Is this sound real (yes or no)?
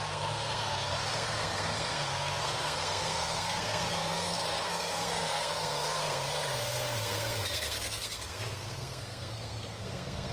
no